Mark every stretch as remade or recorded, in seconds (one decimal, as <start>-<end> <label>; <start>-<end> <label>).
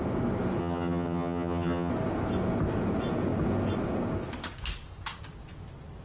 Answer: 0.0-0.6 recorded; 0.6-1.9 remade; 1.9-6.0 recorded